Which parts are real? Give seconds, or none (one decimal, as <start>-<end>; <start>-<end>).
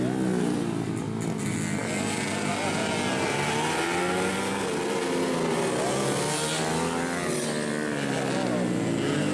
0.0-9.3